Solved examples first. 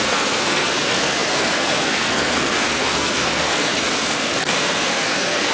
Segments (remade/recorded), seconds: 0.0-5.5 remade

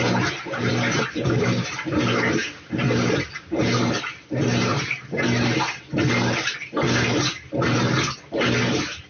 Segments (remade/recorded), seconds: 0.0-9.1 recorded

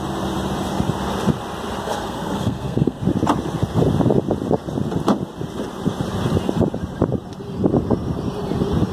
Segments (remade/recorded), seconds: 0.0-1.8 recorded; 1.8-3.0 remade; 3.0-8.9 recorded

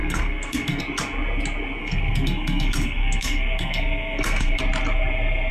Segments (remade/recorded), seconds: 0.0-0.8 remade; 0.8-1.8 recorded; 1.8-4.6 remade; 4.6-5.5 recorded